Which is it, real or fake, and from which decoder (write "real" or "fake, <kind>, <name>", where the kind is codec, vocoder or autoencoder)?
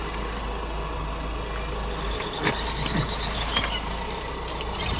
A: real